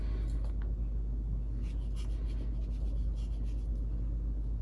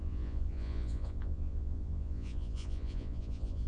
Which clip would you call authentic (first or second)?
first